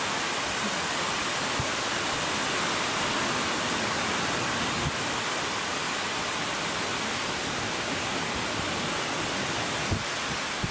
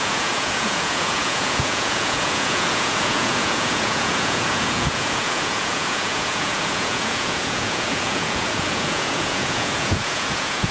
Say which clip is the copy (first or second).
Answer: second